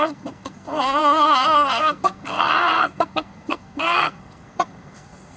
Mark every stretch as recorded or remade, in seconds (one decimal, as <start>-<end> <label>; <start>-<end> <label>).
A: 0.0-5.4 remade